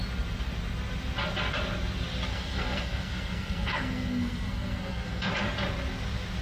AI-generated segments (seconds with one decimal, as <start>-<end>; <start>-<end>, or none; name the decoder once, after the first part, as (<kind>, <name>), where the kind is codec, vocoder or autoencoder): 2.3-5.3 (codec, SNAC)